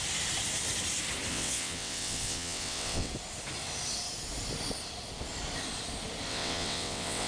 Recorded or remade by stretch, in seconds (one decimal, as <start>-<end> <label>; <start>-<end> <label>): 0.0-1.3 recorded; 1.3-3.1 remade; 3.1-6.3 recorded; 6.3-7.3 remade